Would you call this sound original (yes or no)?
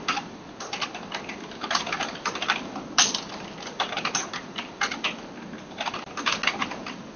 yes